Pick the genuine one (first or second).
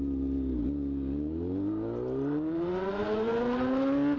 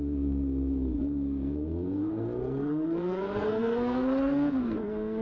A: first